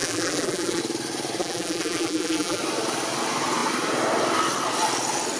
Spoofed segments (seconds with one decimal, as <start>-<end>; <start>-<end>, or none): 0.0-0.8; 1.4-2.6